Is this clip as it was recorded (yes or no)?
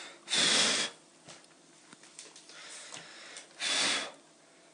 no